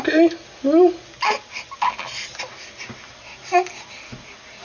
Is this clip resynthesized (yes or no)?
no